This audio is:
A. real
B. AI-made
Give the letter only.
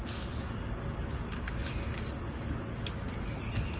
A